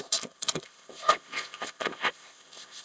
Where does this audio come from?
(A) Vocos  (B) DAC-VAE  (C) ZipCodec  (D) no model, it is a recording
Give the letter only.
C